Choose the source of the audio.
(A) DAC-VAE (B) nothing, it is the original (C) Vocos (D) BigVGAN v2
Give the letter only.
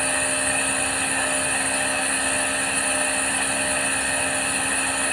B